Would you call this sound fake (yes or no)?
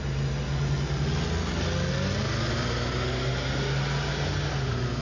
no